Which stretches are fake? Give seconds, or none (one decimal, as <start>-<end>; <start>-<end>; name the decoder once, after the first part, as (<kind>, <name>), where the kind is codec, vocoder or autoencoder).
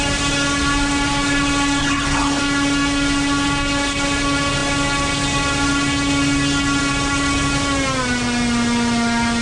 1.8-2.4 (codec, HILCodec)